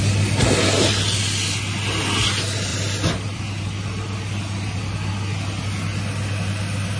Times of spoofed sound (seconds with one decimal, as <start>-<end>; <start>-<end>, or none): 2.7-3.4

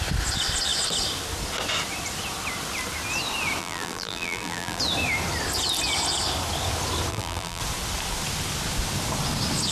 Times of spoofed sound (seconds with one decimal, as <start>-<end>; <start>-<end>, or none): 3.6-4.8; 7.1-7.6

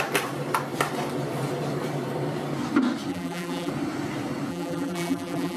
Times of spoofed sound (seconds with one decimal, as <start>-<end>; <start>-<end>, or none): 3.1-3.7; 4.5-5.6

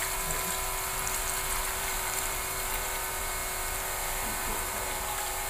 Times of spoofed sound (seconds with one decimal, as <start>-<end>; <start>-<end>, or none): 1.7-5.5

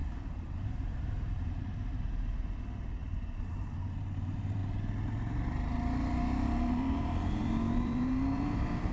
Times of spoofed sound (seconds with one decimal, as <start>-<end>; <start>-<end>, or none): 0.6-4.6; 6.7-8.9